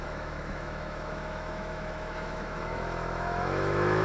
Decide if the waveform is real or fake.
fake